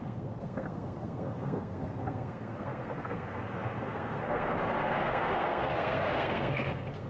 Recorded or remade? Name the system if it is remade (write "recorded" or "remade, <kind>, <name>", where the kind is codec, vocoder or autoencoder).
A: remade, codec, SNAC